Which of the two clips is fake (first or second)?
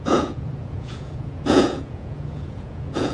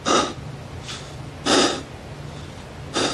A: first